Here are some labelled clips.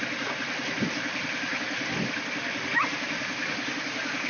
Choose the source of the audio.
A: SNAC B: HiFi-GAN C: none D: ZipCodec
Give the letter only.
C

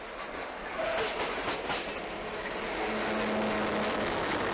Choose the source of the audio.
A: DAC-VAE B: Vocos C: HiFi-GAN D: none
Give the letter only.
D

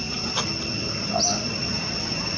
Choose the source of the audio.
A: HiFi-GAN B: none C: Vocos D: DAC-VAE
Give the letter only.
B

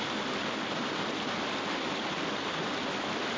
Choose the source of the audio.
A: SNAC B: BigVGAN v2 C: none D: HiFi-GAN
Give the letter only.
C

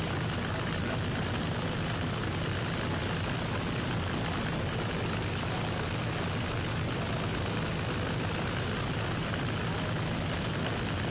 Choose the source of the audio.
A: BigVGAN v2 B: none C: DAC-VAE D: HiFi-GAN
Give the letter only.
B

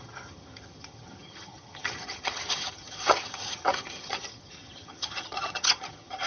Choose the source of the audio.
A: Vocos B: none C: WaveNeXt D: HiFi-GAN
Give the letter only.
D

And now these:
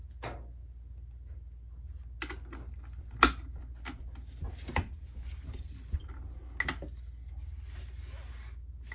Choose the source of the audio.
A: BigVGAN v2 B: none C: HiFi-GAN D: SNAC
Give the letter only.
B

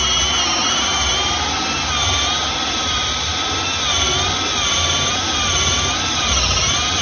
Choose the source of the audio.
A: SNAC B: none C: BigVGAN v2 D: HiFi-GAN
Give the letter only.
B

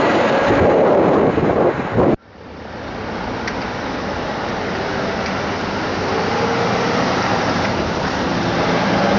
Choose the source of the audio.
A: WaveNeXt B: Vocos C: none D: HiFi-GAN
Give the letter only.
C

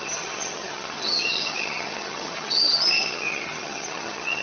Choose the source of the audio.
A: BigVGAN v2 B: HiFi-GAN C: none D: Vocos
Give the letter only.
B